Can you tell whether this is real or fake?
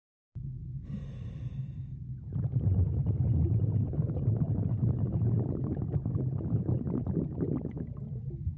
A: real